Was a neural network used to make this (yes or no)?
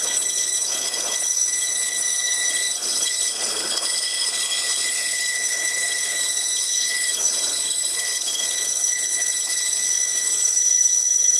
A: yes